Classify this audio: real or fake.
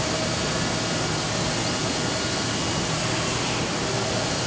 real